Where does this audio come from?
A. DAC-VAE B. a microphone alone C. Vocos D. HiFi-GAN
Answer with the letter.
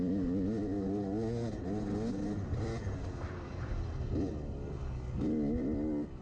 B